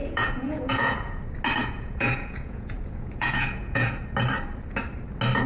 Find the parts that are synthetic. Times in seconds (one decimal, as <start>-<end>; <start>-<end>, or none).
0.0-1.2; 1.6-4.0